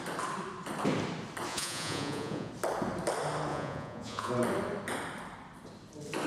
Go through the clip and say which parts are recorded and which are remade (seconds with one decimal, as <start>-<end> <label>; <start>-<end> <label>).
0.0-1.5 recorded; 1.5-2.5 remade; 2.5-3.5 recorded; 3.5-4.3 remade; 4.3-6.3 recorded